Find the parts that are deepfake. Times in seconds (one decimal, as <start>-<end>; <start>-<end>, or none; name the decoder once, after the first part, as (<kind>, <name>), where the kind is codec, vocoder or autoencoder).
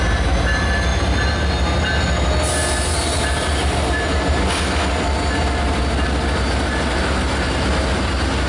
2.9-4.4 (vocoder, BigVGAN v2)